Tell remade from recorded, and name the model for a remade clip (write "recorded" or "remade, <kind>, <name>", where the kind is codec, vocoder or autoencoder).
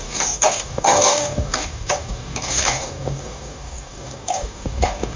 remade, codec, DAC